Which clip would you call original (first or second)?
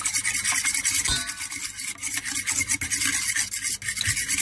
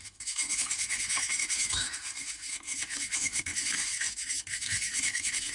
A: first